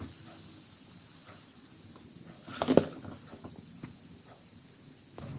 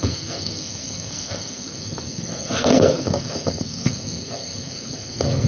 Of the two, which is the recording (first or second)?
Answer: first